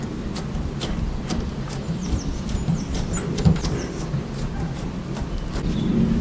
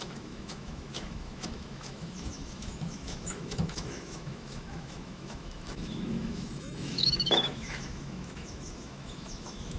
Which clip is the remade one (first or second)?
second